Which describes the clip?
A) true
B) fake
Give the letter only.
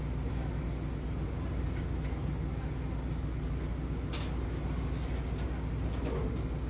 A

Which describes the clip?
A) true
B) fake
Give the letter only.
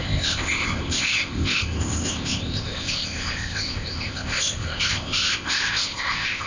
B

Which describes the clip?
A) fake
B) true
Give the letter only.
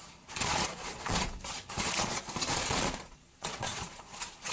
A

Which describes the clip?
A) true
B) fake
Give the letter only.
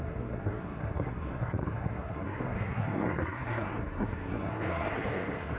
B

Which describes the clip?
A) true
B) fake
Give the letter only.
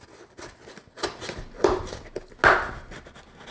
A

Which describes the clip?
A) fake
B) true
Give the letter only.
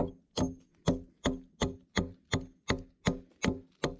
B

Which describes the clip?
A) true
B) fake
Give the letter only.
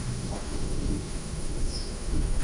B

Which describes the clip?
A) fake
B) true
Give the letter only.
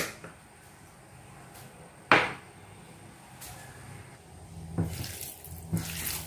B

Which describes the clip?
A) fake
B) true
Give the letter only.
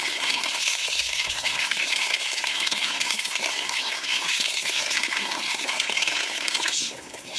A